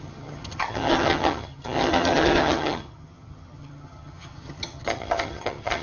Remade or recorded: remade